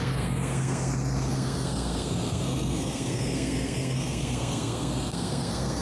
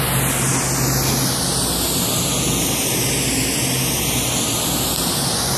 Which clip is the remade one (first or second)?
first